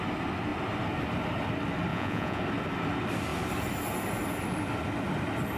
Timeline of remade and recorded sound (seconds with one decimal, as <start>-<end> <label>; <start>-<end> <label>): 0.0-1.9 recorded; 1.9-2.4 remade; 2.4-5.6 recorded